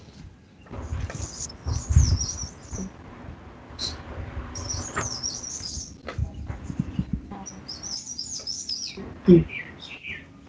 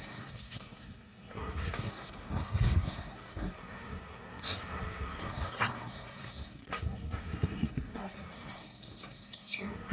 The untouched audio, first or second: first